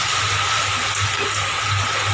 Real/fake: fake